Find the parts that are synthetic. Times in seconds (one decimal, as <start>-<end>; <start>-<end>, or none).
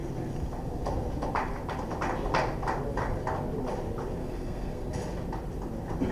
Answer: 4.2-4.9